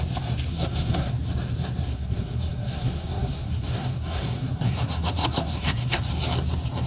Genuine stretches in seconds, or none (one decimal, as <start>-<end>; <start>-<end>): 0.0-0.5; 1.1-1.9; 6.0-6.9